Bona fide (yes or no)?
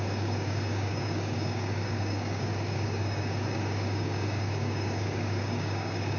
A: no